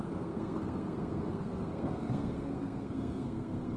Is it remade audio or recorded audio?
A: remade